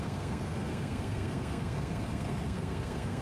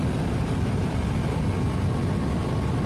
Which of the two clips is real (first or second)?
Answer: second